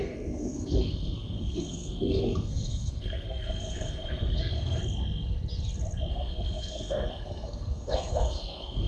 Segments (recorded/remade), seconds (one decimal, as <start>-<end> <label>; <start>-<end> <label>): 0.0-4.8 remade; 4.8-6.1 recorded; 6.1-8.9 remade